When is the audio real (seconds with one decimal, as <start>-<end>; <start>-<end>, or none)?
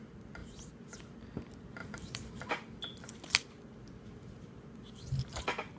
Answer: 0.0-0.4; 1.0-1.8; 2.5-5.8